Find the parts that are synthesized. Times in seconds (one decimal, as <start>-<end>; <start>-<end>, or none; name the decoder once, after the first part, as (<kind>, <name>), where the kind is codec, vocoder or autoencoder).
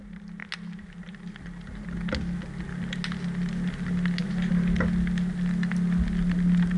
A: none